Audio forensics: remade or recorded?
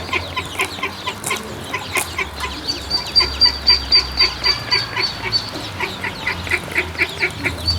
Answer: recorded